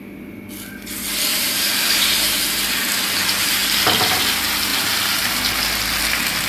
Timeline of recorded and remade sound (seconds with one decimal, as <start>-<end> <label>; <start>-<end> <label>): 0.0-1.3 recorded; 1.3-2.6 remade; 2.6-6.5 recorded